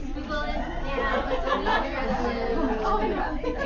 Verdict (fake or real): real